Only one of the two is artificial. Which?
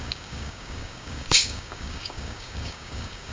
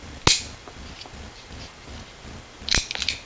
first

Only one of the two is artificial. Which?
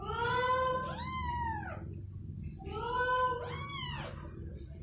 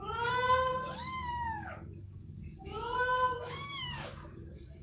second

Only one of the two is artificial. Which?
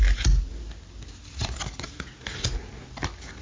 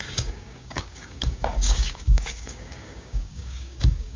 second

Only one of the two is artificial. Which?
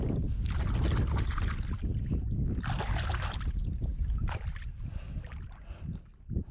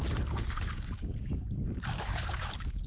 second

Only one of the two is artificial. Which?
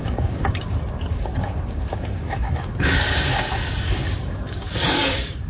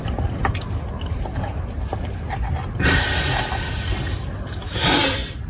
first